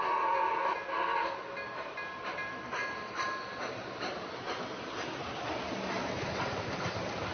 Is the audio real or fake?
fake